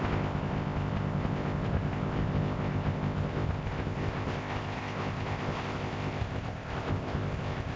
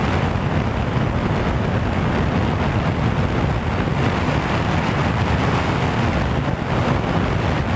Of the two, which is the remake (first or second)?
first